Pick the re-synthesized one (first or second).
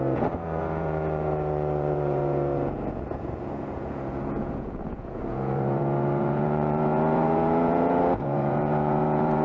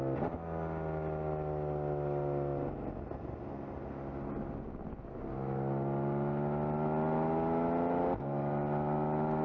first